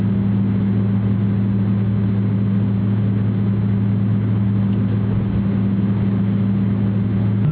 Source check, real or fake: real